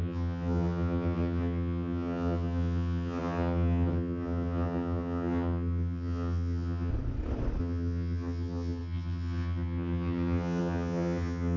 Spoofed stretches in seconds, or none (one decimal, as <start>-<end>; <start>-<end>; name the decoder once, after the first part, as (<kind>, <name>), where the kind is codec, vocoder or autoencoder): 0.0-6.9 (vocoder, HiFi-GAN); 7.6-11.6